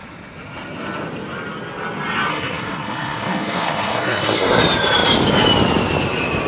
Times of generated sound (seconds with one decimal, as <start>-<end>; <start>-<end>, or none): 2.3-4.6